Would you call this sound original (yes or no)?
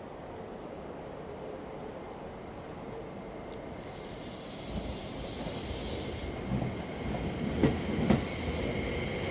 yes